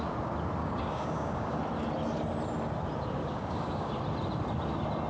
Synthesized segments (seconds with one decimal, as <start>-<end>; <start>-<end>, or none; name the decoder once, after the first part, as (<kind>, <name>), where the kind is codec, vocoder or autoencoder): 0.6-1.6 (codec, DAC); 3.2-3.9